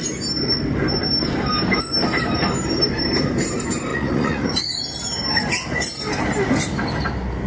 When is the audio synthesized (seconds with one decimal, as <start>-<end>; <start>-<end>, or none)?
3.9-4.5